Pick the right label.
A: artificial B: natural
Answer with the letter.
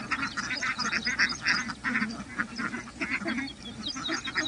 B